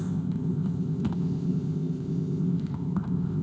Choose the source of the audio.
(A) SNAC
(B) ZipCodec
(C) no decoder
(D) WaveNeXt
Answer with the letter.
B